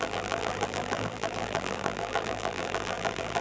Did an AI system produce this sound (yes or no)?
yes